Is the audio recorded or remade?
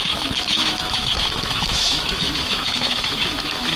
remade